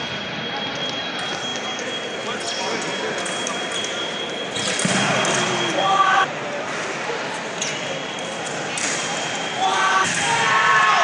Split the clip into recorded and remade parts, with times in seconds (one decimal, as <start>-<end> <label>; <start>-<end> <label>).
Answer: 0.0-11.0 recorded